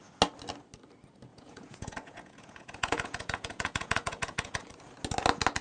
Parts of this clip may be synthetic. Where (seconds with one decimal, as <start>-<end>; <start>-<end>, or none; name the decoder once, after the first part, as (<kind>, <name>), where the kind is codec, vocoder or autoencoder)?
1.3-4.6 (vocoder, Vocos)